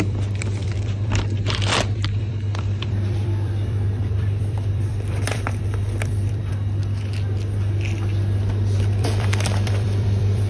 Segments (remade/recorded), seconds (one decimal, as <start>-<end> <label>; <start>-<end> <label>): 0.0-6.5 remade; 6.5-8.8 recorded; 8.8-10.5 remade